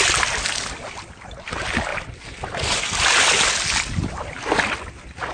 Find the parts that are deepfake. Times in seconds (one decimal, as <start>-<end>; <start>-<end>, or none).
none